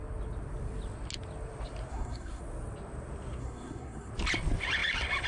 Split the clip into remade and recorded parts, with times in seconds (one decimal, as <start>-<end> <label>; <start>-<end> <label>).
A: 0.0-1.9 recorded; 1.9-2.4 remade; 2.4-3.4 recorded; 3.4-4.1 remade; 4.1-5.3 recorded